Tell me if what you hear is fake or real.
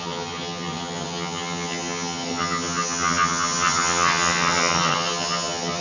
fake